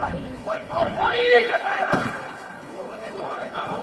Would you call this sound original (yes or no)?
no